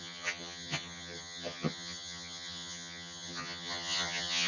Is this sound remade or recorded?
remade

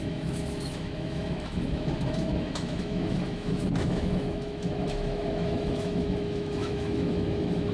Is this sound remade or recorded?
remade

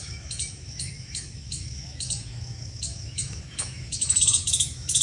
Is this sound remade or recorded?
remade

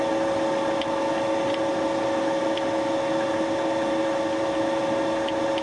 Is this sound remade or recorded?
recorded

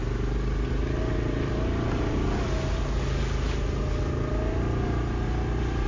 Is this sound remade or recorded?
recorded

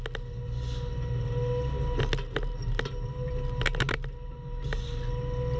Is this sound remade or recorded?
recorded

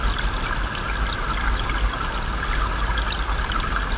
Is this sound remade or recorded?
recorded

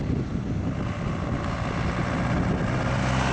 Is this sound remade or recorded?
recorded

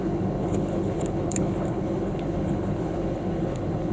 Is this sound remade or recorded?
remade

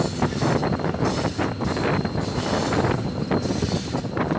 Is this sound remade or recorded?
recorded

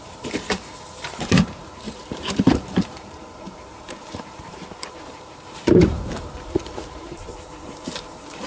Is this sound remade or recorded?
remade